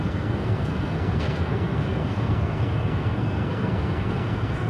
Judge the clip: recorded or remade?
remade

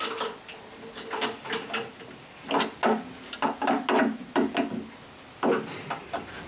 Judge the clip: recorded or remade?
recorded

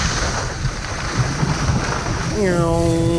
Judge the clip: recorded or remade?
recorded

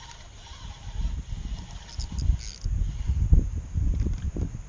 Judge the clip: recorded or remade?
recorded